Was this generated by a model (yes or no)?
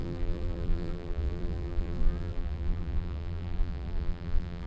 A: yes